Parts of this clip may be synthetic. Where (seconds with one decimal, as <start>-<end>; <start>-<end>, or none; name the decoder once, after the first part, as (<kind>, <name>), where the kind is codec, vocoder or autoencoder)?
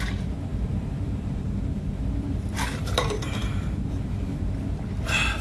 0.0-5.4 (vocoder, BigVGAN v2)